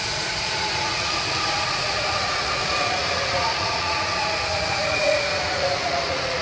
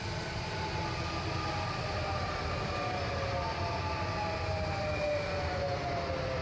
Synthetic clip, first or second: first